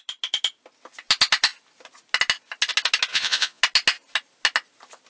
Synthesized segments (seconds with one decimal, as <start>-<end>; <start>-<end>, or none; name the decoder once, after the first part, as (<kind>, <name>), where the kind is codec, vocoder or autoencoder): 3.1-3.6 (vocoder, Vocos)